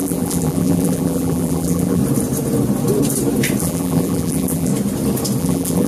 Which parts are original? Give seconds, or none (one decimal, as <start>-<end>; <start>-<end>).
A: 2.0-3.6; 4.7-5.4